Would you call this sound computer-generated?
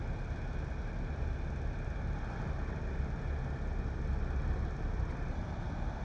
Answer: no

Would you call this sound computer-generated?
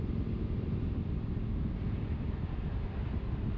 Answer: no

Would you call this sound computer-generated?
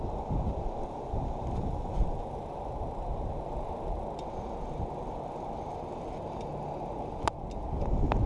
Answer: no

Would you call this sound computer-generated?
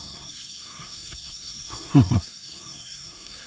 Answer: yes